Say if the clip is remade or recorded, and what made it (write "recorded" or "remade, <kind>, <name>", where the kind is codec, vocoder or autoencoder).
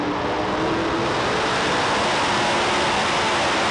recorded